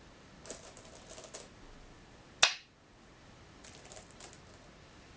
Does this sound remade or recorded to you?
recorded